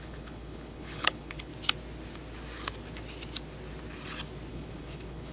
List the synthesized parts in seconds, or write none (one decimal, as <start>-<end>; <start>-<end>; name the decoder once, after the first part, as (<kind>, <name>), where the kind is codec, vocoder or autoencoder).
0.0-1.5 (codec, HILCodec); 4.5-5.3

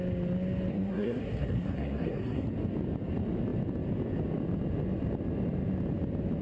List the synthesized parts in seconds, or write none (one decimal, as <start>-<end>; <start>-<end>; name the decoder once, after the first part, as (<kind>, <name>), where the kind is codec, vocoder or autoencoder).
0.7-2.5 (codec, SNAC)